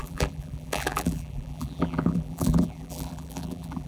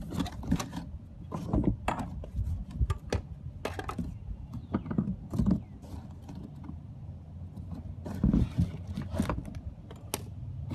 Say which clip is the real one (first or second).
second